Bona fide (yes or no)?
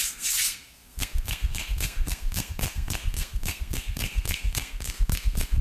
no